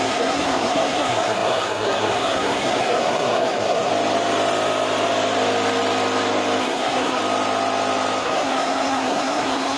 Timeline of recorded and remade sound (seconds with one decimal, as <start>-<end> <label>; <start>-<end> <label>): 0.0-3.9 remade; 3.9-6.6 recorded; 6.6-7.2 remade; 7.2-8.2 recorded; 8.2-9.8 remade